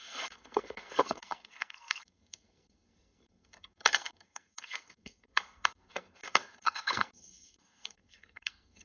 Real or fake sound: fake